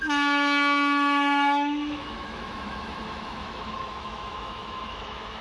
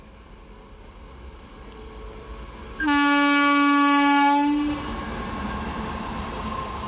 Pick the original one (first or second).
second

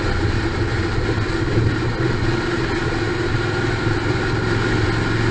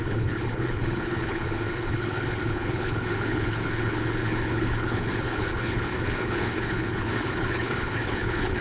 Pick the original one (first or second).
first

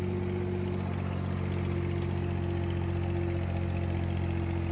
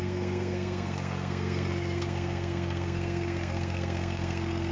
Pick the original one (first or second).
first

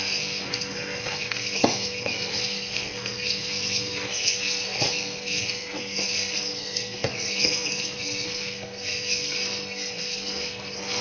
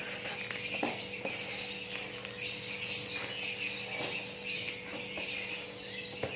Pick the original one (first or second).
second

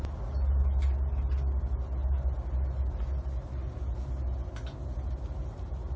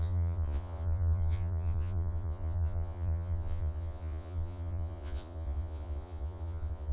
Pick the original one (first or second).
first